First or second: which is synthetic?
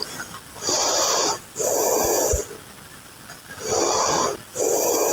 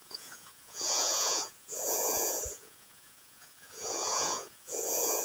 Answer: second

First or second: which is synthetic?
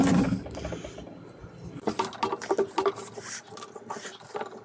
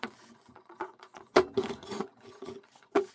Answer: second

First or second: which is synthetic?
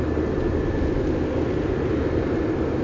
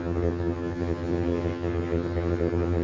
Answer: second